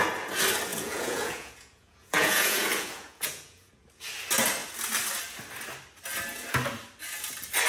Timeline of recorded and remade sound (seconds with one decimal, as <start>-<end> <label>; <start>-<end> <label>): 0.0-0.7 recorded; 0.7-3.7 remade; 3.7-7.7 recorded